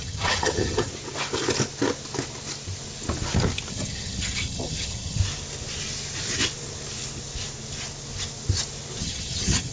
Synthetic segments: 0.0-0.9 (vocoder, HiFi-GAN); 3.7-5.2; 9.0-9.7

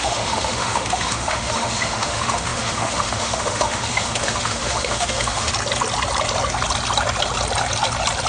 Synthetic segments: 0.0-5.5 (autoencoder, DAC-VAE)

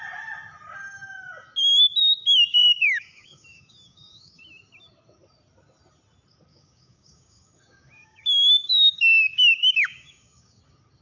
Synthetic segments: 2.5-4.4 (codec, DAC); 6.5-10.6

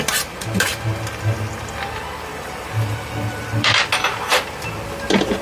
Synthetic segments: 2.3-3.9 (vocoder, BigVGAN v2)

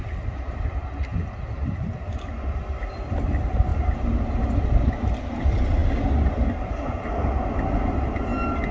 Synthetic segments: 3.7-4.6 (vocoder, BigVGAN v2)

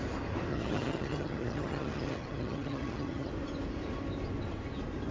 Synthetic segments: 0.5-3.3 (vocoder, HiFi-GAN)

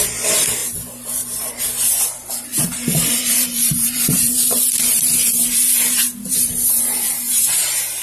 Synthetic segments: 0.6-1.6 (vocoder, BigVGAN v2); 2.5-7.3